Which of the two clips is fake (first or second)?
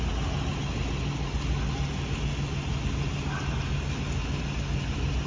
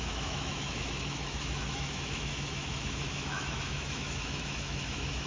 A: second